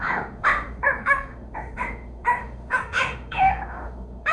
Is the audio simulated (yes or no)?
yes